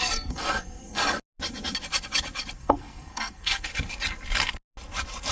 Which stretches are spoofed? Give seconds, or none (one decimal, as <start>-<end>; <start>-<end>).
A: 0.0-1.0; 2.6-3.7